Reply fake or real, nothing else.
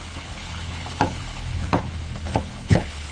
fake